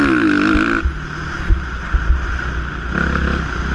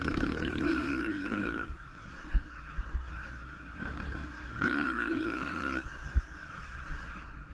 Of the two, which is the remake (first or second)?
second